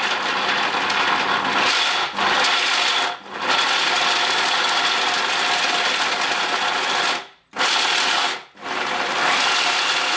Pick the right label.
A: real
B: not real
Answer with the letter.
A